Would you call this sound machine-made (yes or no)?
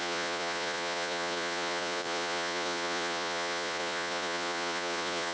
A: yes